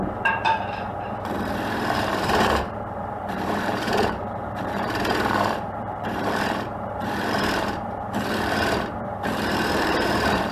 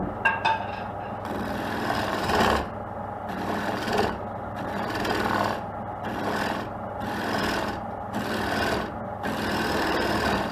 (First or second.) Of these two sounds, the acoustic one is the second